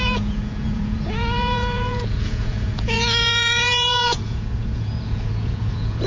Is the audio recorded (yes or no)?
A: no